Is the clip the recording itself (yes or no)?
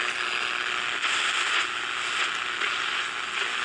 yes